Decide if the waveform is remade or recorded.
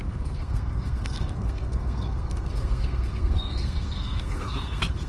remade